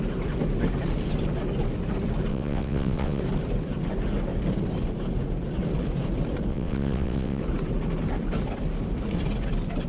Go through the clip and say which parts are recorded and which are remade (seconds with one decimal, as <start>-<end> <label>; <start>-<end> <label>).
0.0-2.3 recorded; 2.3-3.2 remade; 3.2-6.5 recorded; 6.5-7.4 remade; 7.4-9.9 recorded

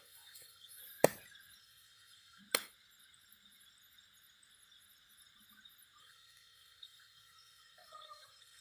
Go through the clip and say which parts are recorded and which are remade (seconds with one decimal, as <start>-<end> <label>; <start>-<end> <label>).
0.0-0.8 remade; 0.8-1.6 recorded; 1.6-2.4 remade; 2.4-6.0 recorded; 6.0-8.6 remade

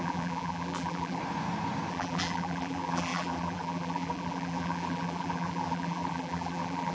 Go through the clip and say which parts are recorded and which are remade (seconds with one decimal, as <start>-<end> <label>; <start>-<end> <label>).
0.0-1.2 remade; 1.2-1.9 recorded; 1.9-6.9 remade

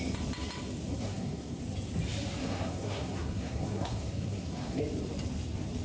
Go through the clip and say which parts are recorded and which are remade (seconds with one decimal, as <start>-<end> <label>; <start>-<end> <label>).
0.0-0.9 recorded; 0.9-1.6 remade; 1.6-2.4 recorded; 2.4-4.8 remade; 4.8-5.8 recorded